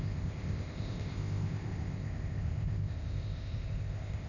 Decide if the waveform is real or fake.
fake